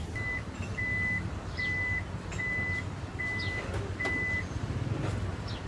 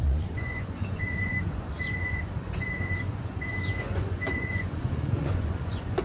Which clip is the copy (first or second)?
second